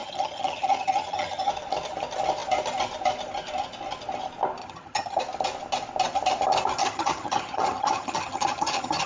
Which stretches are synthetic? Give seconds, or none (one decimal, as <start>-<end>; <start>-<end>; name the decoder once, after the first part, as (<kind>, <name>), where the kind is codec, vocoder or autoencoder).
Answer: 0.0-1.5 (vocoder, HiFi-GAN); 4.6-5.2; 6.8-9.1